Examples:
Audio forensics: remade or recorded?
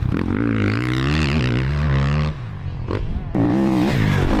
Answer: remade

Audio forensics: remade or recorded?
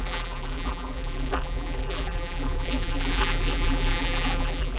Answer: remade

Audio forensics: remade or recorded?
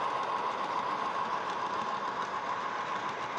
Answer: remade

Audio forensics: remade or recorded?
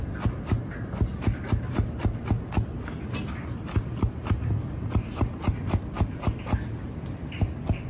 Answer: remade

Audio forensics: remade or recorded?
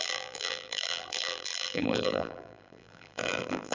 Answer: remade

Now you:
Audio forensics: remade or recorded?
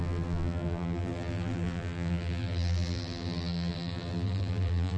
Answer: remade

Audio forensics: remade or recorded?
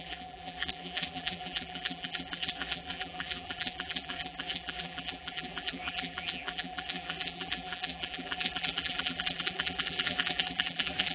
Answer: remade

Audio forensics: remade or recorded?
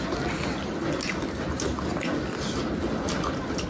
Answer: recorded